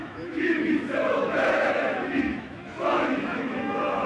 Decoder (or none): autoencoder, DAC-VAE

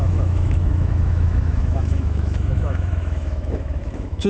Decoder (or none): autoencoder, DAC-VAE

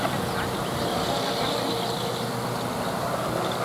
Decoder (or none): none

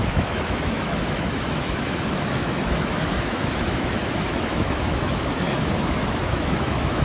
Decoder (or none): autoencoder, DAC-VAE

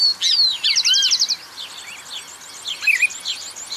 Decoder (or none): none